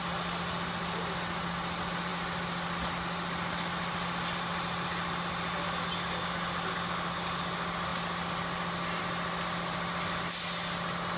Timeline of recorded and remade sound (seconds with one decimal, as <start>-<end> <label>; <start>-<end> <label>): 0.0-11.2 recorded

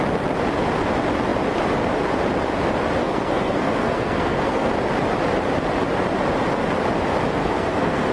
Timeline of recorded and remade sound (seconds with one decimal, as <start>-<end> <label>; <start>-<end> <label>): 0.0-3.0 recorded; 3.0-4.7 remade; 4.7-7.4 recorded; 7.4-8.1 remade

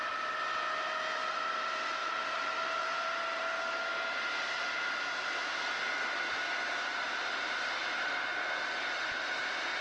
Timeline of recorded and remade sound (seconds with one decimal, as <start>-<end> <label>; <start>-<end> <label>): 0.0-2.0 recorded; 2.0-3.4 remade; 3.4-9.8 recorded

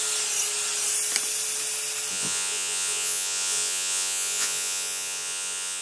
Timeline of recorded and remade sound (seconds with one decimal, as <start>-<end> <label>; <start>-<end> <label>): 0.0-2.1 recorded; 2.1-5.8 remade

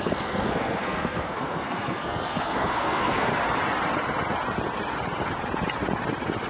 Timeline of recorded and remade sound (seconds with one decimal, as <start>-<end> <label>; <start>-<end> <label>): 0.0-3.3 remade; 3.3-6.5 recorded

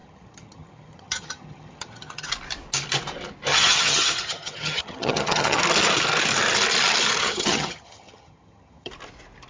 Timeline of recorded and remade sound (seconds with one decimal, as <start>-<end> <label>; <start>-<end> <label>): 0.0-2.3 remade; 2.3-3.5 recorded; 3.5-5.6 remade; 5.6-7.2 recorded; 7.2-8.9 remade; 8.9-9.5 recorded